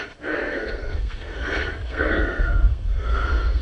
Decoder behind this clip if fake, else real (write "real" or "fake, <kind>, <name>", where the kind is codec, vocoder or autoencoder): fake, codec, SNAC